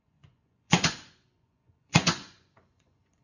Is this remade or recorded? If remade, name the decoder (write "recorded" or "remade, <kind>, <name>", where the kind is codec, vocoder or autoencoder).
remade, vocoder, Vocos